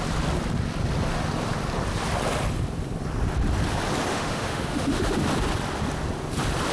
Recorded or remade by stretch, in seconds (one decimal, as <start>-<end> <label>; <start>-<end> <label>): 0.0-4.1 recorded; 4.1-5.0 remade; 5.0-6.7 recorded